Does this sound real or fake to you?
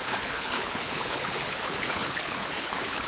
fake